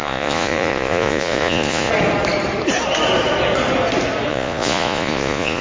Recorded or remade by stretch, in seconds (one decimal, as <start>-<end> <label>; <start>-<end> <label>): 0.0-1.9 remade; 1.9-4.3 recorded; 4.3-5.6 remade